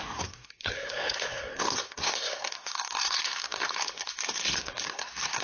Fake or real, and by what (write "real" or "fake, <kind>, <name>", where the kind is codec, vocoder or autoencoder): fake, codec, SNAC